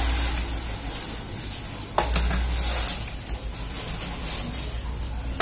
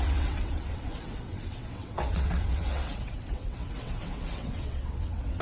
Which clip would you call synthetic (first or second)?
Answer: second